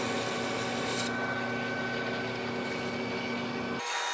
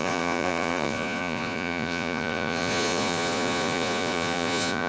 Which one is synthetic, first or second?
second